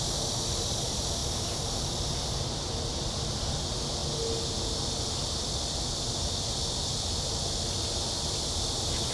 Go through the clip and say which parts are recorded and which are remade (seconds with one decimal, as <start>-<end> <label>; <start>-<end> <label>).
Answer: 0.0-9.1 recorded